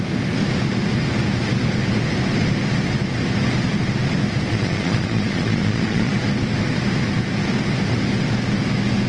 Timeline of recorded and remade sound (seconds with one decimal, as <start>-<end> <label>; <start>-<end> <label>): 0.0-4.5 recorded; 4.5-6.1 remade; 6.1-9.1 recorded